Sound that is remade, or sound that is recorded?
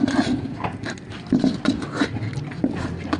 recorded